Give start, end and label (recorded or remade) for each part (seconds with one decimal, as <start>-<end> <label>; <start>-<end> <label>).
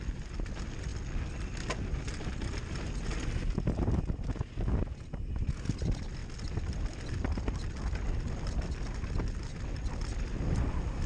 0.0-11.1 recorded